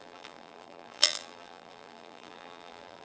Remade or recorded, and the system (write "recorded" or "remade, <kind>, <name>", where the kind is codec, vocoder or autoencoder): remade, vocoder, BigVGAN v2